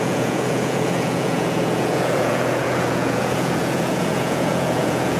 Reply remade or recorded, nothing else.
remade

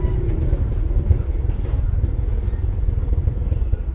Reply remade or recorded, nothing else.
recorded